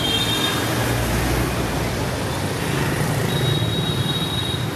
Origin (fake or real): real